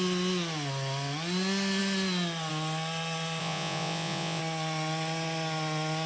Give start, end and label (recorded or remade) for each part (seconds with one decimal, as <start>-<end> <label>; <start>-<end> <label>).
0.0-3.4 recorded; 3.4-4.4 remade; 4.4-6.1 recorded